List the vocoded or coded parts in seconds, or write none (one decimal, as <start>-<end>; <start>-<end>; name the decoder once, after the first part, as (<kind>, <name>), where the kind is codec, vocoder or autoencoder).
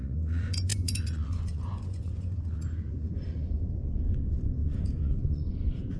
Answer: 0.0-6.0 (vocoder, Vocos)